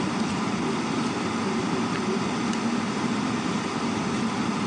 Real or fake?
real